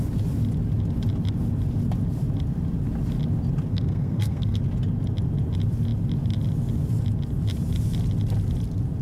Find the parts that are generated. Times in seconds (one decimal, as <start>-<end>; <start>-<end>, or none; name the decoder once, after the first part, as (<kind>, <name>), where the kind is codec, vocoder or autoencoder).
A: 3.7-4.6 (codec, SNAC)